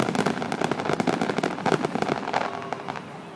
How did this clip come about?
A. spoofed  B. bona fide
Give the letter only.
B